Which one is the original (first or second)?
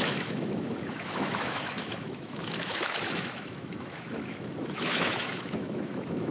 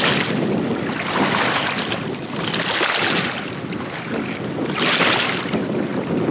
second